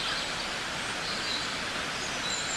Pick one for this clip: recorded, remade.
recorded